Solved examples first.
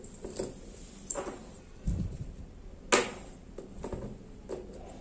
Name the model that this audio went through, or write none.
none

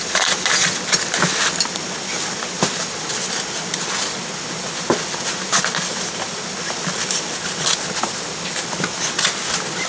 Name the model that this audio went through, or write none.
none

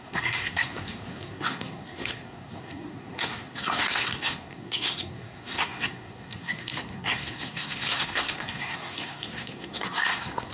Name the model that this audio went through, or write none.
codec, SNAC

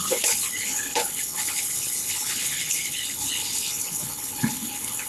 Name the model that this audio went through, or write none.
codec, HILCodec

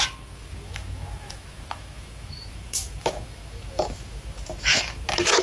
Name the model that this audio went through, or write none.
autoencoder, DAC-VAE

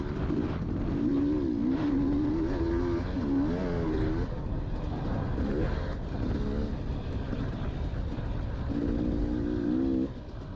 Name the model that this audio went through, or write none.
none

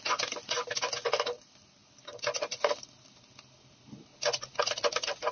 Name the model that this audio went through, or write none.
none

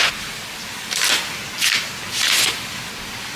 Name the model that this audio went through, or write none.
none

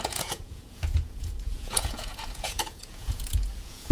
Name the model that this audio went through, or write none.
vocoder, Vocos